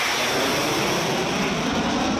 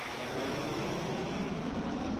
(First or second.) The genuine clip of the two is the first